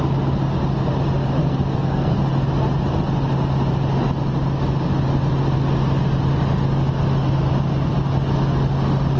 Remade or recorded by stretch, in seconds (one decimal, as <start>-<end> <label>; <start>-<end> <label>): 0.0-1.4 recorded; 1.4-2.1 remade; 2.1-9.2 recorded